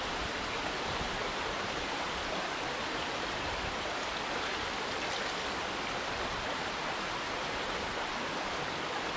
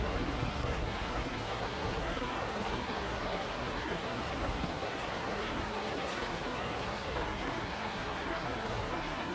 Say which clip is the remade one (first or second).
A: second